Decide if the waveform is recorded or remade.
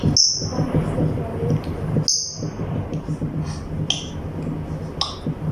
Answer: recorded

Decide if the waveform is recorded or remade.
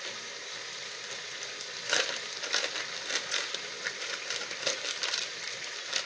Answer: recorded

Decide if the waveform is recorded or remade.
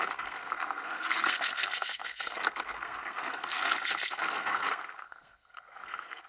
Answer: remade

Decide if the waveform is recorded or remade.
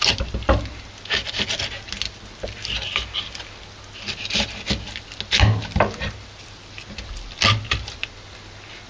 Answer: recorded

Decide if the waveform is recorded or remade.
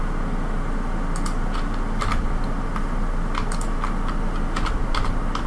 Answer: recorded